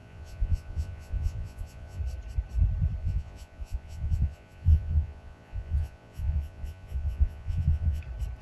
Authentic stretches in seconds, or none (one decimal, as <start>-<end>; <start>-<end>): 2.0-3.0; 8.0-8.4